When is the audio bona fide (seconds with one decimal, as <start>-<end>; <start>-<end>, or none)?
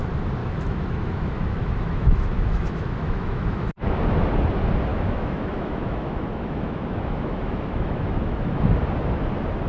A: 0.0-0.4; 4.0-4.9; 8.8-9.7